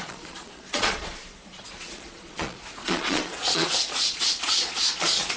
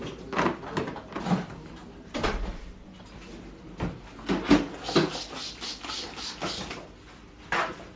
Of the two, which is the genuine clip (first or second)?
second